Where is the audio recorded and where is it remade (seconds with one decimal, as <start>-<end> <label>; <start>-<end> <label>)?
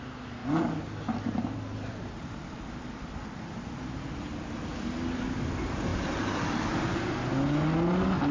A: 0.0-0.4 recorded; 0.4-3.8 remade; 3.8-5.9 recorded; 5.9-6.5 remade; 6.5-8.3 recorded